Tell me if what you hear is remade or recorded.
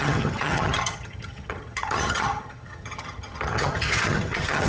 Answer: remade